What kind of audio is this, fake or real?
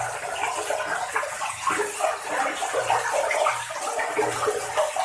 real